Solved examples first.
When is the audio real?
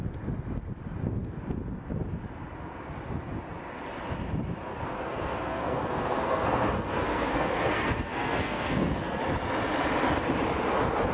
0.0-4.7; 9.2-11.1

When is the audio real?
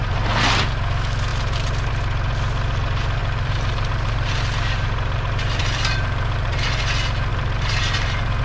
0.6-3.2; 6.8-7.3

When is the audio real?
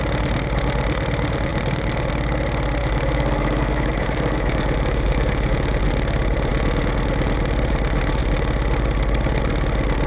0.0-2.8; 5.5-10.1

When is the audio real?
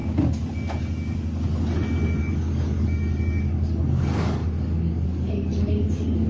0.0-2.2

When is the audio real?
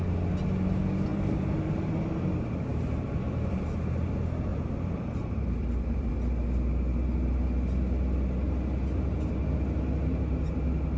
0.0-1.1; 2.2-2.7; 3.8-4.5; 6.1-11.0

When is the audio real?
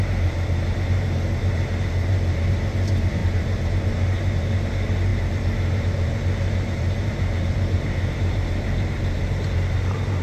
none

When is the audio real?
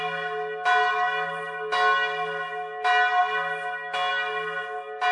0.0-5.1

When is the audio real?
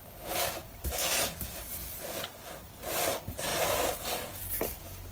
0.0-5.1